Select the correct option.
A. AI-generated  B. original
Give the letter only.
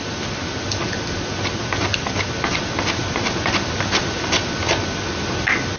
B